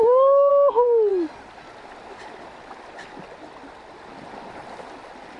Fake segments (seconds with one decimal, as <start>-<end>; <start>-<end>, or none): 0.0-0.5